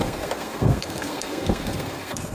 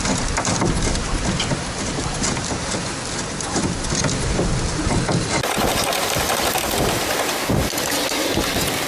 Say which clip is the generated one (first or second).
first